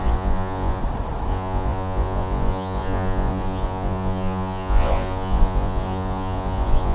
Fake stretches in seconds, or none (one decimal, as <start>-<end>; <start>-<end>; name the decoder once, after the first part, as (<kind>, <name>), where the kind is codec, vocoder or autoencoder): 0.0-0.8 (vocoder, Vocos); 1.3-6.9